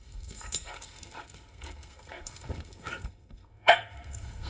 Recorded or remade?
remade